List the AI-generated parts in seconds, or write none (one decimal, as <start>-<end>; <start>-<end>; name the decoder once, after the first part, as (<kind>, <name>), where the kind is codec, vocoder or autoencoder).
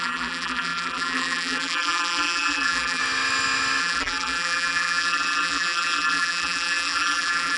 0.0-3.0 (vocoder, BigVGAN v2); 3.8-7.6